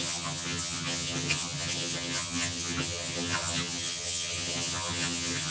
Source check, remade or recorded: remade